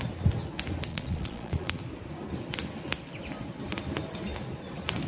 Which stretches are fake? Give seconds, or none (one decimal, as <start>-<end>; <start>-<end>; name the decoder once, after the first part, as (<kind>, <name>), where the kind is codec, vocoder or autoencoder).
0.9-1.7 (vocoder, Vocos)